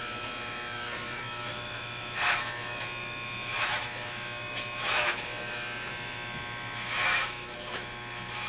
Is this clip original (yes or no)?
no